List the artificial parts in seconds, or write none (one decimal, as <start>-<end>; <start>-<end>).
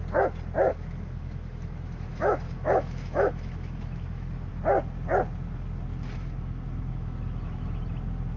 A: 0.7-4.5; 6.2-7.8